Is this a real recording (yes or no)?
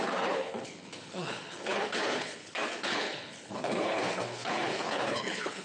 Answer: no